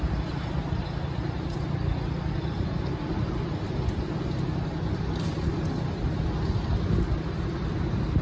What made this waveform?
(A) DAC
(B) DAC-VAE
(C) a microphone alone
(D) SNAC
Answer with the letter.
C